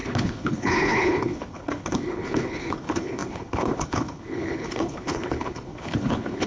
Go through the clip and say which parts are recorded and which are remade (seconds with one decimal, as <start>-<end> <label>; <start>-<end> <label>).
0.0-6.5 remade